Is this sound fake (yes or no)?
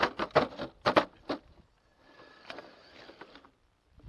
no